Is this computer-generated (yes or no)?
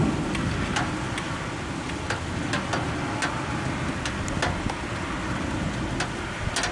no